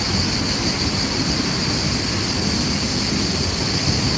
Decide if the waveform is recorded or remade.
recorded